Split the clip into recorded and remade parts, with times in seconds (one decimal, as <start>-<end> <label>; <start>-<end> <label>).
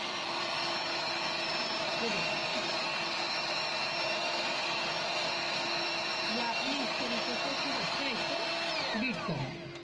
0.0-9.8 recorded